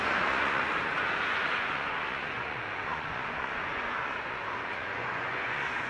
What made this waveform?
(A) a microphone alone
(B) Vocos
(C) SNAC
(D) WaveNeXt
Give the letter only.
B